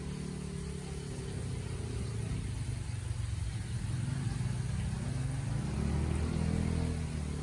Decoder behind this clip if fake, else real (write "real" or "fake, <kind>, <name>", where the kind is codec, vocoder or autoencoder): real